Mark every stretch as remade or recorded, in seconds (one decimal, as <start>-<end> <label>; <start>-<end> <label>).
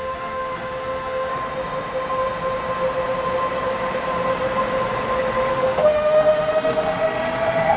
0.0-1.3 remade; 1.3-5.5 recorded; 5.5-7.8 remade